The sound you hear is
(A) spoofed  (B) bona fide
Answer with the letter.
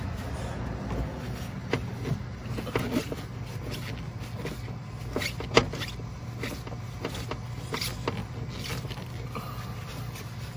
B